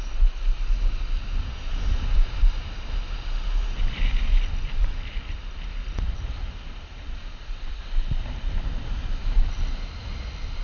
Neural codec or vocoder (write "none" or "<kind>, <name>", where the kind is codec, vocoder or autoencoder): none